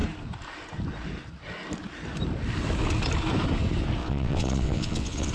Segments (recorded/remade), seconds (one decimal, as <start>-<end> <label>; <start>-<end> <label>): 0.0-4.0 recorded; 4.0-5.3 remade

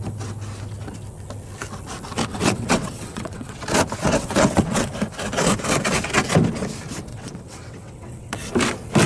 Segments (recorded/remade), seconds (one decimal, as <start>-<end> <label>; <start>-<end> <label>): 0.0-2.3 recorded; 2.3-3.6 remade; 3.6-4.0 recorded; 4.0-4.9 remade; 4.9-7.1 recorded; 7.1-8.5 remade; 8.5-9.1 recorded

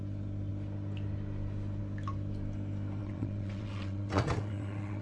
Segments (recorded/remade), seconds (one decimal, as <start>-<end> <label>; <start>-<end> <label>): 0.0-3.0 recorded; 3.0-5.0 remade

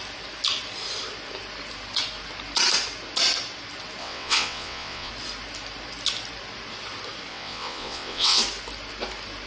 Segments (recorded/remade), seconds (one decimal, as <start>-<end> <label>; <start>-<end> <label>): 0.0-4.0 recorded; 4.0-5.1 remade; 5.1-7.3 recorded; 7.3-8.4 remade; 8.4-9.5 recorded

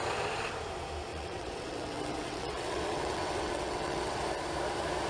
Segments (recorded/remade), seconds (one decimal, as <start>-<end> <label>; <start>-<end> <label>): 0.0-1.1 recorded; 1.1-4.2 remade; 4.2-5.1 recorded

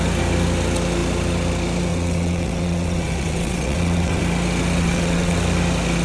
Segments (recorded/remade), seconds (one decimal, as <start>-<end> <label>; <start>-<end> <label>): 0.0-1.9 recorded; 1.9-4.2 remade; 4.2-4.8 recorded; 4.8-5.4 remade; 5.4-6.0 recorded

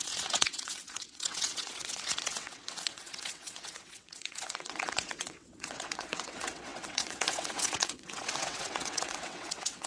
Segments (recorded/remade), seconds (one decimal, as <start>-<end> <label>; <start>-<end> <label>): 0.0-9.9 remade

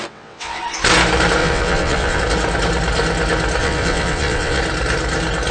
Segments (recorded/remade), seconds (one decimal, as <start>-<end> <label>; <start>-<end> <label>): 0.0-0.6 remade; 0.6-1.4 recorded; 1.4-2.2 remade; 2.2-3.6 recorded; 3.6-4.6 remade; 4.6-5.5 recorded